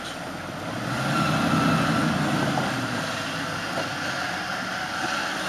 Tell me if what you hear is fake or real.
real